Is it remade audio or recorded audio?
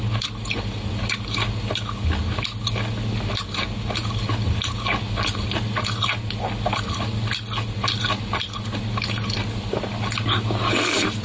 recorded